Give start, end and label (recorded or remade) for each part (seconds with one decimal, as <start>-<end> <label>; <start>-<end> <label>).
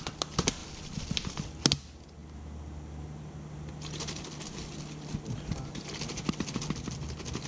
0.0-7.5 recorded